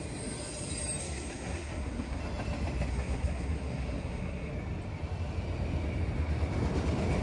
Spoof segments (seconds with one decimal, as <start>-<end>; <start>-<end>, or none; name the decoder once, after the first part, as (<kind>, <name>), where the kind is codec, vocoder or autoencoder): 1.0-2.2 (codec, SNAC); 2.9-4.5